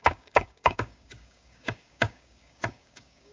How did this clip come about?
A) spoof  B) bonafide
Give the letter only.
A